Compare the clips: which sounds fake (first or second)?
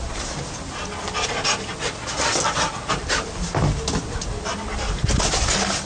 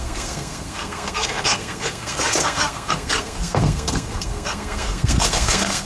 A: second